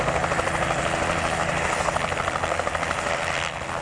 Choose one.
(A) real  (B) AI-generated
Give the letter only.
A